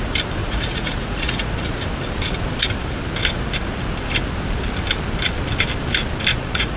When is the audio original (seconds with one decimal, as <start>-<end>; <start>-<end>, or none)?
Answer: 0.0-0.4; 1.5-6.3